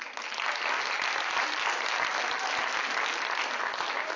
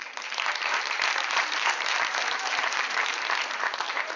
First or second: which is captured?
first